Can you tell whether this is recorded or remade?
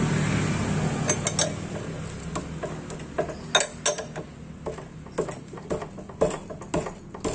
recorded